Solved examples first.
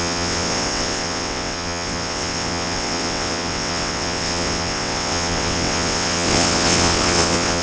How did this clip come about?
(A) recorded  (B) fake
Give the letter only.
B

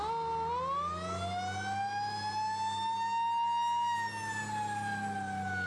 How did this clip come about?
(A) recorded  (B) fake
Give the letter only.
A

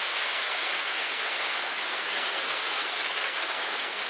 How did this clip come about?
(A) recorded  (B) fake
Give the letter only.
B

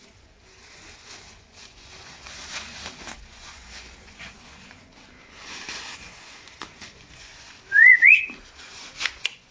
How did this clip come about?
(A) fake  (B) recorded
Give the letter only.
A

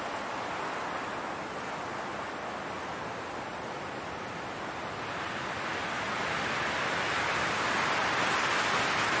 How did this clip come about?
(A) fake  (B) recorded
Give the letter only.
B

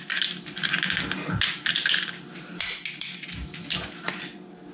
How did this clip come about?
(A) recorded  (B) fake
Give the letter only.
A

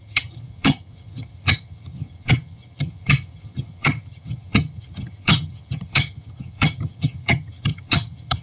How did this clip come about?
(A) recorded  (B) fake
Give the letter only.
B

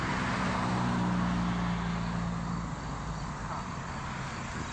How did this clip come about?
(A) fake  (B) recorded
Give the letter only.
B